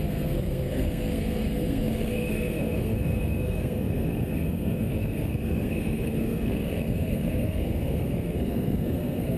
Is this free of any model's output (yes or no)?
no